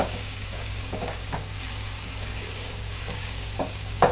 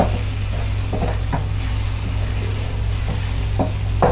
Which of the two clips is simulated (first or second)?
first